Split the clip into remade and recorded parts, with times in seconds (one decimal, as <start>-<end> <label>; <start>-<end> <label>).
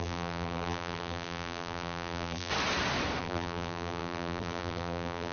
0.0-2.5 remade; 2.5-3.2 recorded; 3.2-5.3 remade